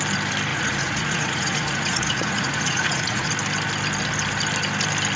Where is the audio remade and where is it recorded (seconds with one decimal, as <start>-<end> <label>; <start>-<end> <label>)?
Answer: 0.0-0.5 recorded; 0.5-3.3 remade; 3.3-5.2 recorded